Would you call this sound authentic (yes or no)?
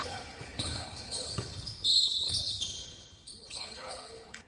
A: no